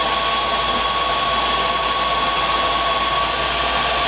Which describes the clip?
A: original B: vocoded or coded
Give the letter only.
A